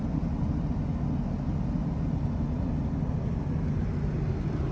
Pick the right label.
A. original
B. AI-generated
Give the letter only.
A